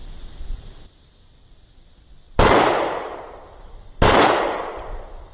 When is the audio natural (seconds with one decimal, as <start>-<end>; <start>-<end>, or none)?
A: 0.0-5.3